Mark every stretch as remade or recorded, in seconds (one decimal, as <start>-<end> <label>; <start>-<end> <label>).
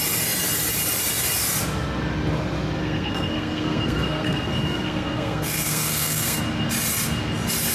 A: 0.0-2.8 recorded; 2.8-6.4 remade; 6.4-7.7 recorded